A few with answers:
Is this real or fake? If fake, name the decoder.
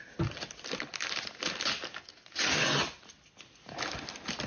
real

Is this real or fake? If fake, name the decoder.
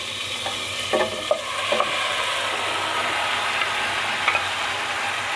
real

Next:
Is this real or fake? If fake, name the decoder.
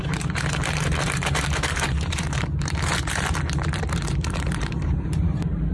fake, vocoder, BigVGAN v2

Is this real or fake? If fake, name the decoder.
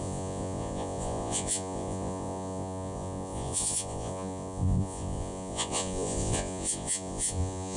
fake, vocoder, Vocos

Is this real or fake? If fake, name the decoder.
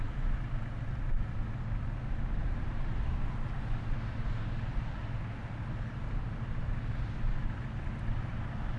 real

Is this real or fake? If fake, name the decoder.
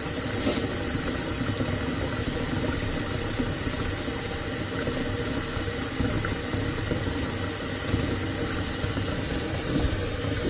real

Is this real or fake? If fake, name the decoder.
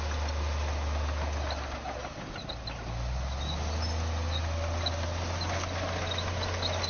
real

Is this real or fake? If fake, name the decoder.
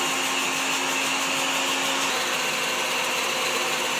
real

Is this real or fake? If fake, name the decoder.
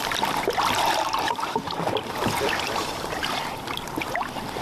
fake, vocoder, BigVGAN v2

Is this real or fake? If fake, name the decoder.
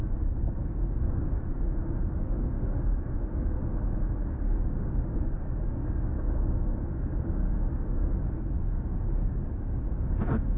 fake, codec, DAC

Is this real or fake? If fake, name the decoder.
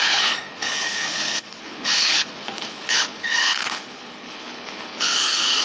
fake, codec, HILCodec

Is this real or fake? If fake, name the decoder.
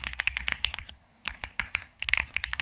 fake, codec, SNAC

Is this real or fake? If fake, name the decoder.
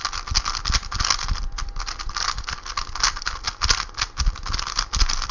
real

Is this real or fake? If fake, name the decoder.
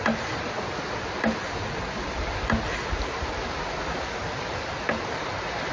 real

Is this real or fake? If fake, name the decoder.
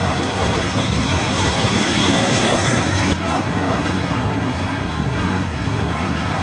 fake, codec, SNAC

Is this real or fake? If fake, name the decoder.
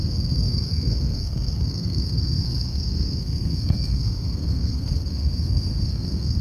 fake, codec, SNAC